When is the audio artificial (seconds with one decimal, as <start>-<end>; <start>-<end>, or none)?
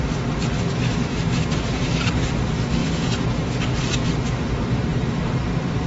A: 1.1-2.3; 4.9-5.9